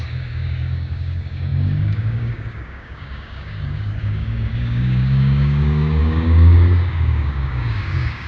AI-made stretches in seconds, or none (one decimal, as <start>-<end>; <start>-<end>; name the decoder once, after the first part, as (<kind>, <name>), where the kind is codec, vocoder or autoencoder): 0.0-8.3 (codec, DAC)